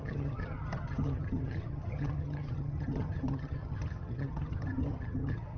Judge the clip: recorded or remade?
remade